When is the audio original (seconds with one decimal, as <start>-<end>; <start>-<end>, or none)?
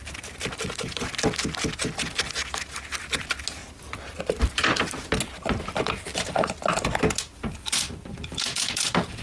0.0-9.2